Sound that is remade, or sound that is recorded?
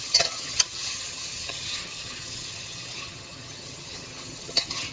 remade